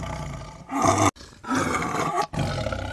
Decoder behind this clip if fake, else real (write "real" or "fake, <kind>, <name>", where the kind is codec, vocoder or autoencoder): real